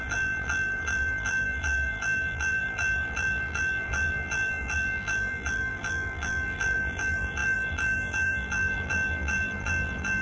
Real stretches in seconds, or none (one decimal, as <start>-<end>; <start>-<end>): none